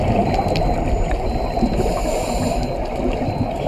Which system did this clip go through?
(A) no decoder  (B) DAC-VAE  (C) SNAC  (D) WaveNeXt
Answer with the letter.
A